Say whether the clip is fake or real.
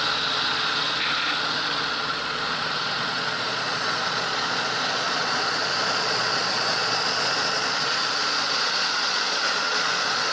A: fake